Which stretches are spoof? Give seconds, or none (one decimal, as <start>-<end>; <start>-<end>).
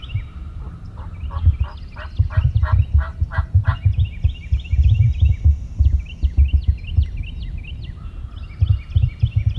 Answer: none